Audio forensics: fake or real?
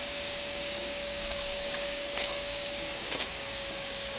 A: fake